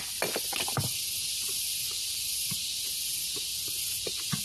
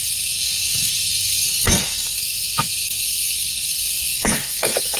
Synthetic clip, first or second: second